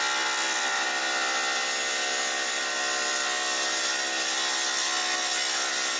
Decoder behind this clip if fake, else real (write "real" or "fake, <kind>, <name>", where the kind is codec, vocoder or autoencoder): real